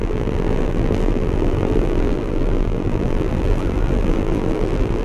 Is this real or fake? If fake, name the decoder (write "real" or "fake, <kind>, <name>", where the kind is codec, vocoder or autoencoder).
fake, vocoder, BigVGAN v2